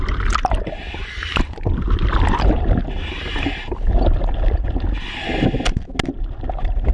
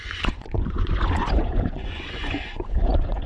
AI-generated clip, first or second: second